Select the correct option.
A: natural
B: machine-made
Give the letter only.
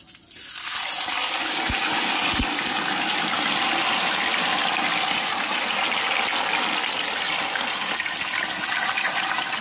A